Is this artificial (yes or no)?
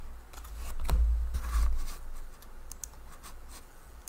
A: no